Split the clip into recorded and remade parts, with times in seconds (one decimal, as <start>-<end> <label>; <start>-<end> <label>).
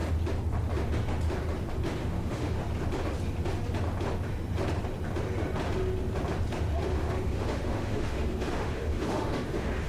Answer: 0.0-2.0 recorded; 2.0-2.6 remade; 2.6-6.9 recorded; 6.9-9.9 remade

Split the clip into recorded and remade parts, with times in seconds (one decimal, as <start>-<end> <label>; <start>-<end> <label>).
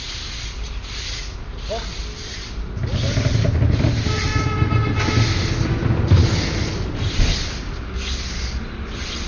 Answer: 0.0-9.3 recorded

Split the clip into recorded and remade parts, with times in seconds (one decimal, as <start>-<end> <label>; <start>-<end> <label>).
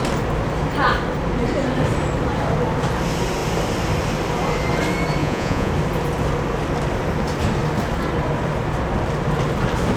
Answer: 0.0-5.2 recorded; 5.2-5.7 remade; 5.7-10.0 recorded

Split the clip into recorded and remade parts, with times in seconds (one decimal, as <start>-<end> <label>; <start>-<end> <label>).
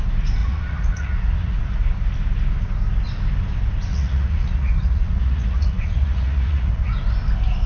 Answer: 0.0-0.4 recorded; 0.4-1.6 remade; 1.6-3.9 recorded; 3.9-6.9 remade; 6.9-7.7 recorded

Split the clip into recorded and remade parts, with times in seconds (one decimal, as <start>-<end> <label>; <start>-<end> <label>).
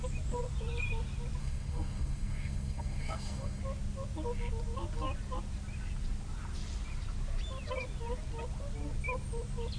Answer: 0.0-1.4 recorded; 1.4-3.6 remade; 3.6-9.8 recorded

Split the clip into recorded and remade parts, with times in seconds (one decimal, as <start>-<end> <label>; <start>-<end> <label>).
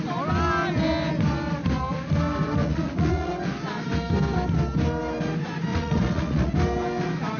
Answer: 0.0-2.6 recorded; 2.6-3.3 remade; 3.3-5.7 recorded; 5.7-6.5 remade; 6.5-7.4 recorded